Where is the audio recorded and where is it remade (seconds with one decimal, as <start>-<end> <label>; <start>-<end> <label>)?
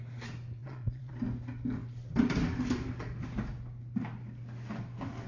0.0-0.6 recorded; 0.6-1.1 remade; 1.1-5.3 recorded